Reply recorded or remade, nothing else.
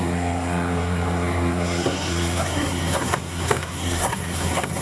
remade